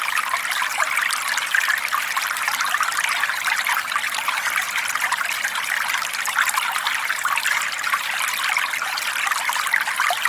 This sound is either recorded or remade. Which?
recorded